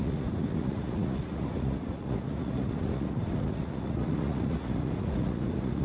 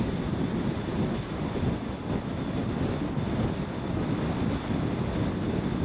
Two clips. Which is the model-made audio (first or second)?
first